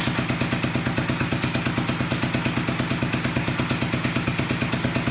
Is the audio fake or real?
real